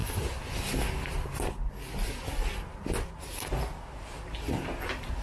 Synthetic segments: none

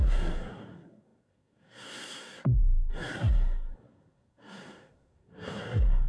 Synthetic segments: 0.0-6.1 (codec, SNAC)

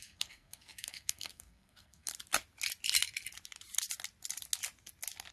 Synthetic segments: 0.0-2.1 (codec, SNAC)

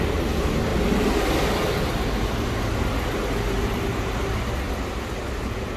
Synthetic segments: none

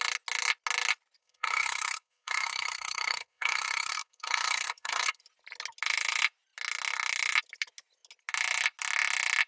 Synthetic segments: 1.2-5.2 (codec, SNAC)

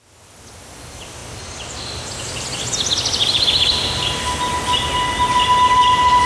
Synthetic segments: none

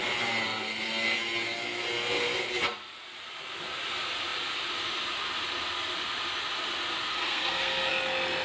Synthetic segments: 7.1-7.9 (codec, SNAC)